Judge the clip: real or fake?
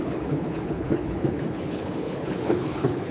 fake